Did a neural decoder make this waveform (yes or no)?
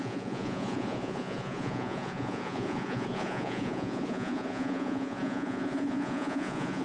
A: yes